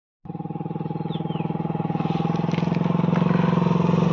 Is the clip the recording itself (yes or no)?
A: yes